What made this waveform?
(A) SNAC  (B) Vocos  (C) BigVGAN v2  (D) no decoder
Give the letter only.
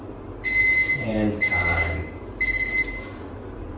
D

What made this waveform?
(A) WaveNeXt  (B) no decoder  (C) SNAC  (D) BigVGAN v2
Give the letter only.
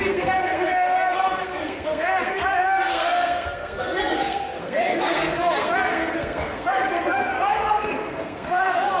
C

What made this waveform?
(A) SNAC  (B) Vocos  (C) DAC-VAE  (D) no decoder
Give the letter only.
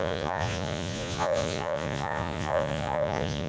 B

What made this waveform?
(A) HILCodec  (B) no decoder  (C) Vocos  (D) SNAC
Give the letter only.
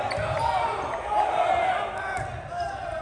B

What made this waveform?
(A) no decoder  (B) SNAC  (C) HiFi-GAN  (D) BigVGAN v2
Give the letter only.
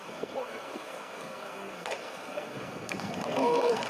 B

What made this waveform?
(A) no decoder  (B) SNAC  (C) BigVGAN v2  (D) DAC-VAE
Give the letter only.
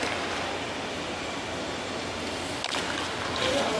A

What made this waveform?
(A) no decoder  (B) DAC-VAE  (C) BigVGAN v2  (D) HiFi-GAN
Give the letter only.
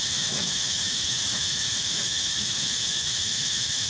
B